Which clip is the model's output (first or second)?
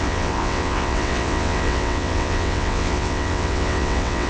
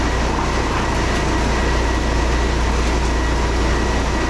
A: first